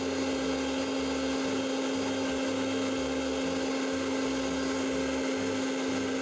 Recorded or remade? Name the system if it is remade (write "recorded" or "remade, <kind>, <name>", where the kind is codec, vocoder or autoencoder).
recorded